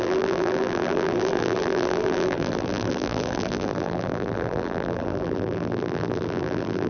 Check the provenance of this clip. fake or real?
fake